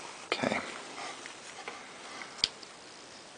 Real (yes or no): yes